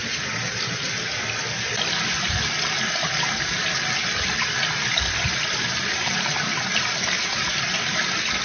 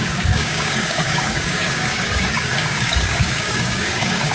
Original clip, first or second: first